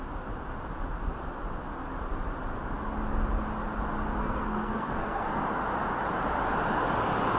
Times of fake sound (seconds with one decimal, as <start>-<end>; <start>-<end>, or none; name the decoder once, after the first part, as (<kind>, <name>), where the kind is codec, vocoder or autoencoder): 4.2-5.4 (codec, SNAC)